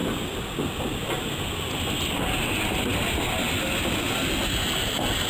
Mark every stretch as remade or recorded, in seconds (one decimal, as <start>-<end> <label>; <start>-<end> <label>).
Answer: 0.0-5.3 recorded